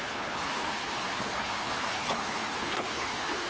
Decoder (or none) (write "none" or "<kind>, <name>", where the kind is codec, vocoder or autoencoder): codec, HILCodec